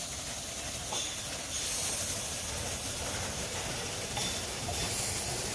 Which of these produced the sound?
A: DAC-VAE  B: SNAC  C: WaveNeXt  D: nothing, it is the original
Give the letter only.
D